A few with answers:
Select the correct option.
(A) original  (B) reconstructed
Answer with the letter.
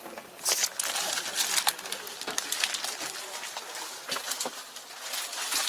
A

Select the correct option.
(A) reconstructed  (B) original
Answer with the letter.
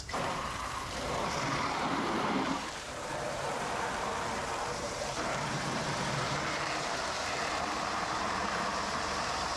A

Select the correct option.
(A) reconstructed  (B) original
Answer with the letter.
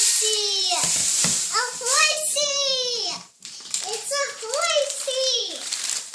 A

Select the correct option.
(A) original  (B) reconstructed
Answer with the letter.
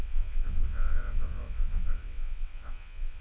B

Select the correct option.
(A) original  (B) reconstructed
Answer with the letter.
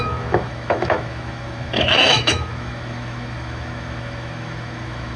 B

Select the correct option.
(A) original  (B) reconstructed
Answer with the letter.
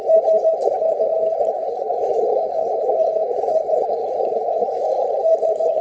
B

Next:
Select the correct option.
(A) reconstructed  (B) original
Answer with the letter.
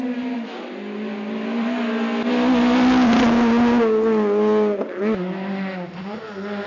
B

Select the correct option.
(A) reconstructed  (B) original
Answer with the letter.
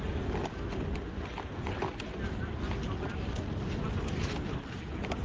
B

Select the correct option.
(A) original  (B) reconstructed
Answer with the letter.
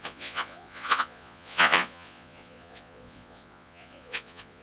B